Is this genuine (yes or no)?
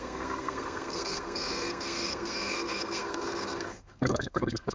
no